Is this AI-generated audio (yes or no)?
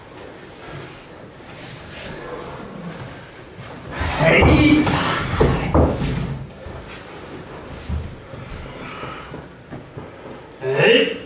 no